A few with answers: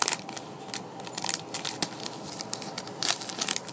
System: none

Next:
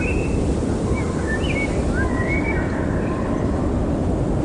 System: none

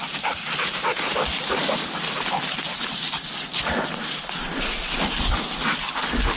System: none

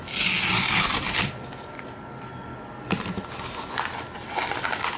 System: none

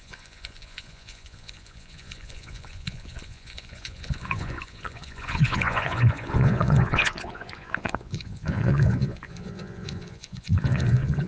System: vocoder, Vocos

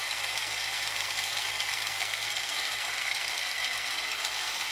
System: codec, SNAC